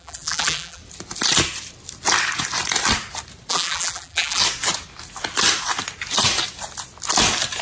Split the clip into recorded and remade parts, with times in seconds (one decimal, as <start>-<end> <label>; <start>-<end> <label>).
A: 0.0-0.8 remade; 0.8-3.5 recorded; 3.5-4.4 remade; 4.4-7.6 recorded